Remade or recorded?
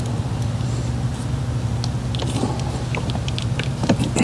recorded